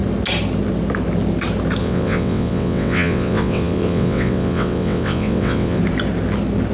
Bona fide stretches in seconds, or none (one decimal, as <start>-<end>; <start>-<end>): 0.0-1.8; 5.8-6.7